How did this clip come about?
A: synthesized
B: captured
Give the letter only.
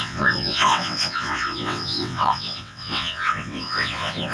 A